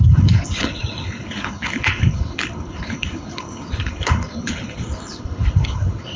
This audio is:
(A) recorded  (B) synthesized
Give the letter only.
B